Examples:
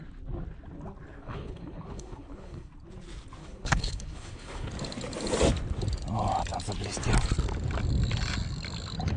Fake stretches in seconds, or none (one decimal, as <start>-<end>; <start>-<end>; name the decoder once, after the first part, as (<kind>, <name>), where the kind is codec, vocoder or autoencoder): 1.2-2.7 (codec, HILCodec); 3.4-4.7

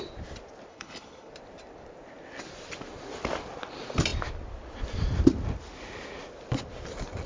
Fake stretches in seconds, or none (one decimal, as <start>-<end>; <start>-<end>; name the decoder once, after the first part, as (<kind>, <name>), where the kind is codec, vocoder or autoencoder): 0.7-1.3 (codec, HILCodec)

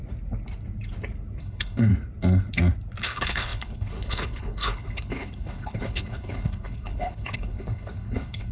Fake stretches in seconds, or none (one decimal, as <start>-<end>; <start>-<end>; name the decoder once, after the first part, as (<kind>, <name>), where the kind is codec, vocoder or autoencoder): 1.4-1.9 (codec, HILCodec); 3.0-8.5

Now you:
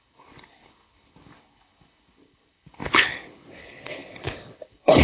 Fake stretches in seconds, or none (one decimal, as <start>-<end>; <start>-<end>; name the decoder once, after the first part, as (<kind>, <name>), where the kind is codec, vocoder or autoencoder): 0.0-5.0 (codec, HILCodec)

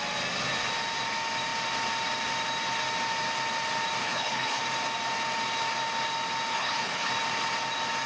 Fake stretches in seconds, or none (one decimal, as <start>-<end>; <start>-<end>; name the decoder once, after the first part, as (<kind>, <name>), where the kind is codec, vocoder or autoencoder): 4.0-4.6 (codec, HILCodec); 6.5-7.1

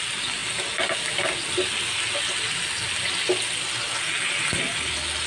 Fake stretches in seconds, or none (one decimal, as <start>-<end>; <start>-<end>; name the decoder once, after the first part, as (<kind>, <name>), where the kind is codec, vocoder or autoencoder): none

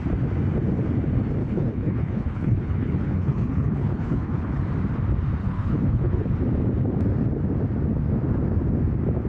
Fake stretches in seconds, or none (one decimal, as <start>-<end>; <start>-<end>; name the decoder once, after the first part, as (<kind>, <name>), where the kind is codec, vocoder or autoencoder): 1.4-4.6 (codec, HILCodec); 5.4-6.3

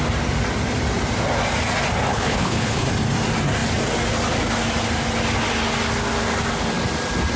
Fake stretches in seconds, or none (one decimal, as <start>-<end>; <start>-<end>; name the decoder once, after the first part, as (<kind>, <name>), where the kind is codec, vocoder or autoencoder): 2.1-2.9 (codec, HILCodec)